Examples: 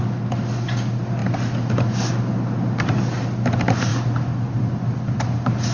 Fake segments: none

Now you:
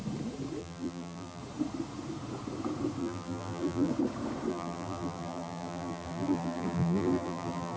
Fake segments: 0.6-1.4; 3.0-3.9; 4.5-7.8

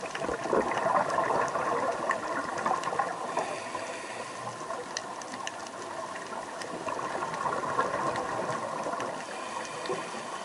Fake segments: 2.5-3.0

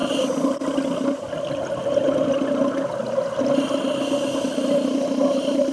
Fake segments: none

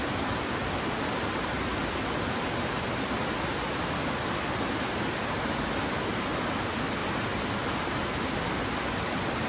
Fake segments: 7.0-8.5

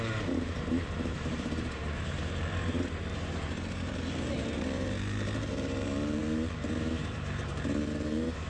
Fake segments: 0.0-8.5

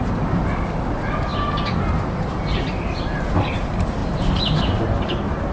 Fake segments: 4.0-4.9

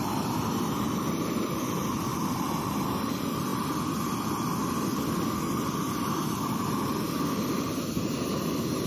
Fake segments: 0.0-3.5; 5.6-8.9